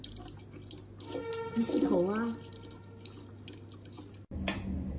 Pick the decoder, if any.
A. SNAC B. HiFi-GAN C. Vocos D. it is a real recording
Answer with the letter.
D